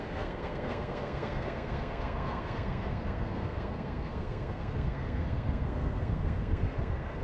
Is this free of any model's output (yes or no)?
no